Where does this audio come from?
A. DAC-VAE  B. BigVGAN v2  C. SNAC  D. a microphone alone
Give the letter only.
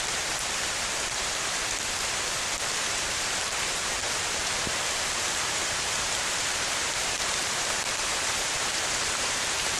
B